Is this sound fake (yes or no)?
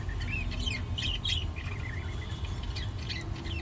no